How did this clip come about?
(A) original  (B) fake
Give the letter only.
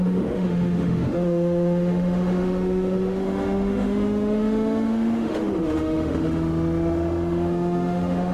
B